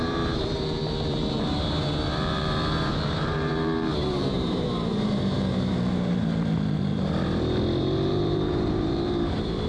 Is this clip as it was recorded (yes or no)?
no